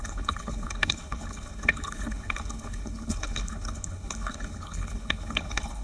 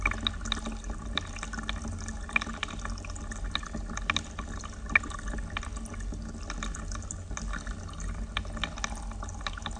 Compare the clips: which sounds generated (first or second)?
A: first